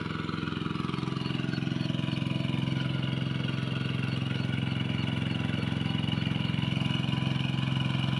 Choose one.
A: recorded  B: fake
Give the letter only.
A